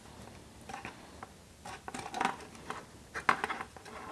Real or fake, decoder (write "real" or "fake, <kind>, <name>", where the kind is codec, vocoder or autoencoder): real